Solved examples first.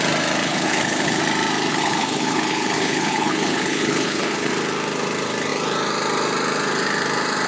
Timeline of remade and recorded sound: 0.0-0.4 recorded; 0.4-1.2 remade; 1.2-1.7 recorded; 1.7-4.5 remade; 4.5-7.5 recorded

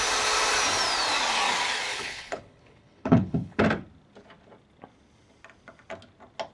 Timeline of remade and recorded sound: 0.0-1.9 recorded; 1.9-3.6 remade; 3.6-6.5 recorded

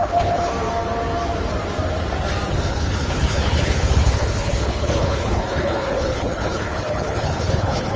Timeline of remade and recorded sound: 0.0-0.5 remade; 0.5-2.5 recorded; 2.5-8.0 remade

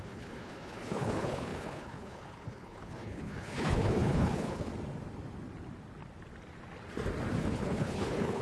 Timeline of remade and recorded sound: 0.0-4.7 remade; 4.7-7.4 recorded; 7.4-8.4 remade

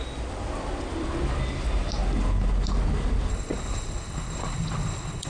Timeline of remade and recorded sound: 0.0-3.3 recorded; 3.3-5.3 remade

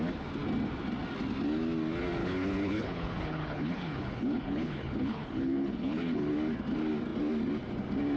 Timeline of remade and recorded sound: 0.0-2.2 recorded; 2.2-6.3 remade; 6.3-8.2 recorded